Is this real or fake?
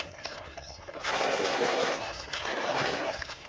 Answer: fake